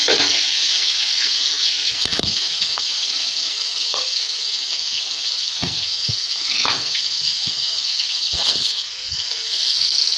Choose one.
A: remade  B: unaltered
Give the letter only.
A